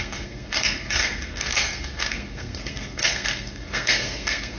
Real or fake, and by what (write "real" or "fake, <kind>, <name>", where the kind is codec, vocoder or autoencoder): fake, codec, SNAC